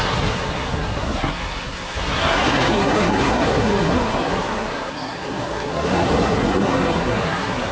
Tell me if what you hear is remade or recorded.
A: remade